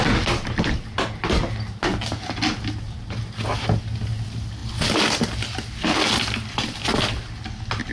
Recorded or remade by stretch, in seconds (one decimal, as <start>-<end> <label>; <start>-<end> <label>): 0.0-7.9 recorded